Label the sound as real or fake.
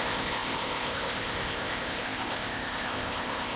fake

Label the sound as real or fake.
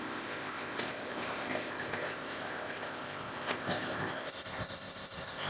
fake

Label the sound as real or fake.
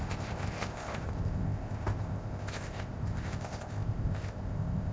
fake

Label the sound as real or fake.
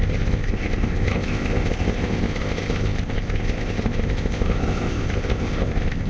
fake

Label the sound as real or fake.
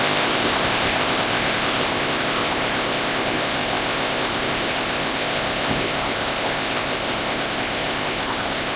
fake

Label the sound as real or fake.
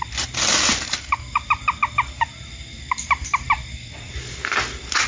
real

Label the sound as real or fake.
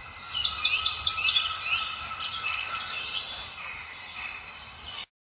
real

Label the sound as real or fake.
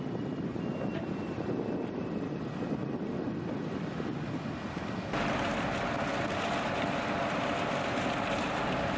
real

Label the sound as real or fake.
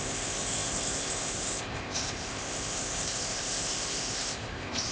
fake